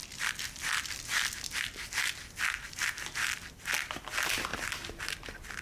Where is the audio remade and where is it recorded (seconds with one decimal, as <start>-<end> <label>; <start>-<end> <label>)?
0.0-5.6 recorded